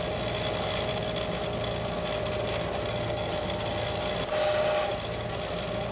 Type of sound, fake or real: real